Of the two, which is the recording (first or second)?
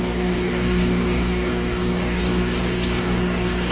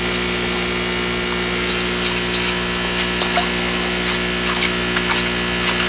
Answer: second